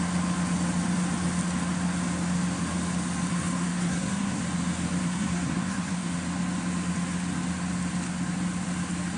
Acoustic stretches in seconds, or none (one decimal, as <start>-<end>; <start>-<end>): 0.0-3.3; 4.4-5.0; 6.1-9.2